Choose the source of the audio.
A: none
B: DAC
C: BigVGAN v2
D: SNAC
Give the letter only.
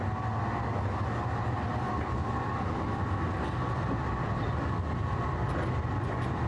A